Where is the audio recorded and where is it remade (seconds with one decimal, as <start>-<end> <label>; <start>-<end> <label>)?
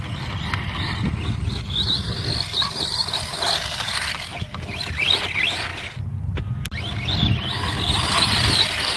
0.0-9.0 recorded